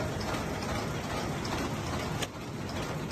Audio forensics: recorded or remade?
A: recorded